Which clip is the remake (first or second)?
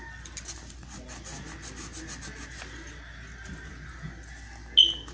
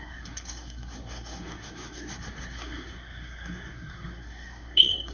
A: second